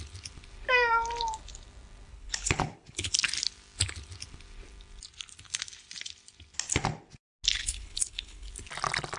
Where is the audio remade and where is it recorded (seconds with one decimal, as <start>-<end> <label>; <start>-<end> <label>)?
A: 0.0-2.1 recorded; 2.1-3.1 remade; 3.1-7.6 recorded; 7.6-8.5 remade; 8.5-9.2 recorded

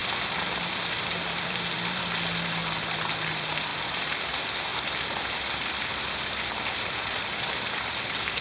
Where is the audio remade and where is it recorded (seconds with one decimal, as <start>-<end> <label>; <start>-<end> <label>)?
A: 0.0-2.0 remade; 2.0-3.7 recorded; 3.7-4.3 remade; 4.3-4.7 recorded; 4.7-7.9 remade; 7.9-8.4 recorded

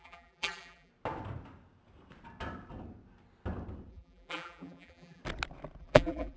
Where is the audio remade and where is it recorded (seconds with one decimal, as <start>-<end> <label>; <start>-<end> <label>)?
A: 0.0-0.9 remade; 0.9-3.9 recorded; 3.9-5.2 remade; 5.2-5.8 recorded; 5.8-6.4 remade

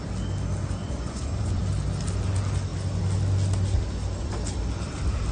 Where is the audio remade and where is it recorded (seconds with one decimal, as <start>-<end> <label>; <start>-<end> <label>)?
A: 0.0-0.8 recorded; 0.8-1.6 remade; 1.6-5.3 recorded